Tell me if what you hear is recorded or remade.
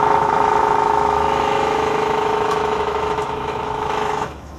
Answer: remade